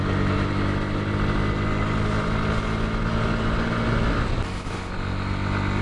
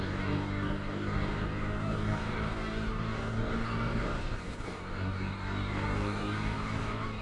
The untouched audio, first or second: first